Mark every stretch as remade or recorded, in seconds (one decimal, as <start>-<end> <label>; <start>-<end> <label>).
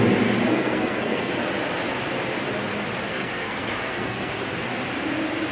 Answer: 0.0-0.5 recorded; 0.5-1.3 remade; 1.3-3.1 recorded; 3.1-4.3 remade; 4.3-5.5 recorded